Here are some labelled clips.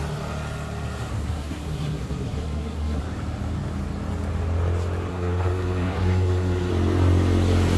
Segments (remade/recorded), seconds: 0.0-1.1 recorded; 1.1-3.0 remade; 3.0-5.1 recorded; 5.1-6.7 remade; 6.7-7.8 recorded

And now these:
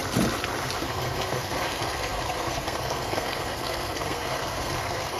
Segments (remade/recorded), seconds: 0.0-0.8 recorded; 0.8-5.2 remade

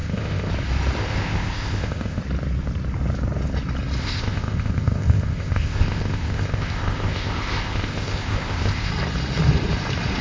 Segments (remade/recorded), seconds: 0.0-0.5 remade; 0.5-1.0 recorded; 1.0-2.2 remade; 2.2-4.0 recorded; 4.0-8.9 remade; 8.9-10.2 recorded

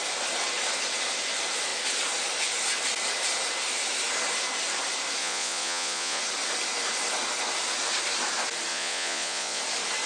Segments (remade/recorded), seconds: 0.0-5.2 recorded; 5.2-6.2 remade; 6.2-8.7 recorded; 8.7-9.6 remade; 9.6-10.1 recorded